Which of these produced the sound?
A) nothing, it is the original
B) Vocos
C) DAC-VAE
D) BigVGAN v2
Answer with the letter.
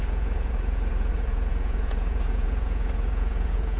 B